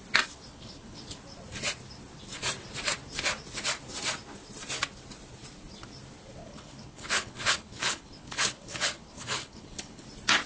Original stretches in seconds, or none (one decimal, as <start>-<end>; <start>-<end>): 0.0-0.5; 1.0-6.4; 10.0-10.5